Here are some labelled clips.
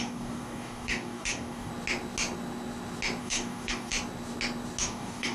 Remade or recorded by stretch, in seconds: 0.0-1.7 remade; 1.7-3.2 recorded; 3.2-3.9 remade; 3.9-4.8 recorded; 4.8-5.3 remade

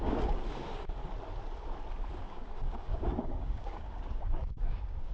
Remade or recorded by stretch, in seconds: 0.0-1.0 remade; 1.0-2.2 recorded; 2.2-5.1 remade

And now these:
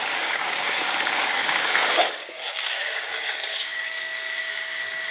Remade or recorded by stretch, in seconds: 0.0-5.1 remade

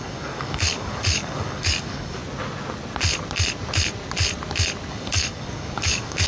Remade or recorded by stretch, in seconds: 0.0-2.2 remade; 2.2-4.9 recorded; 4.9-6.3 remade